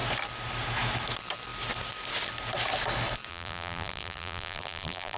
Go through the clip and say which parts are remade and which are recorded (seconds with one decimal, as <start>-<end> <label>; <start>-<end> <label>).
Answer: 0.0-3.3 recorded; 3.3-5.2 remade